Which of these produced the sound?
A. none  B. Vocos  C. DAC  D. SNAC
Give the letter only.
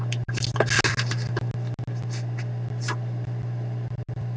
A